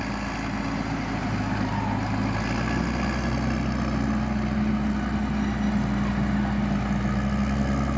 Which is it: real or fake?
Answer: real